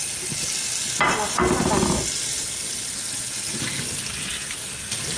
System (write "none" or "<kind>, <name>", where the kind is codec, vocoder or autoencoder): none